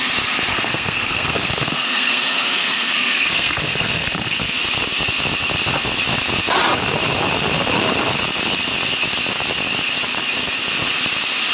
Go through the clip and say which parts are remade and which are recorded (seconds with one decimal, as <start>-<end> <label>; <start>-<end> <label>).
0.0-0.5 recorded; 0.5-4.6 remade; 4.6-11.5 recorded